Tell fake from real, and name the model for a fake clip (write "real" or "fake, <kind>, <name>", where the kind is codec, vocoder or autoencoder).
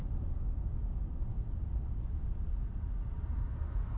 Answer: real